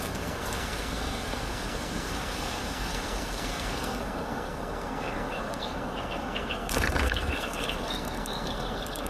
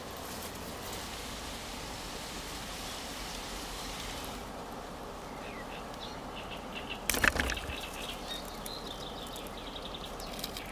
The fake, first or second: first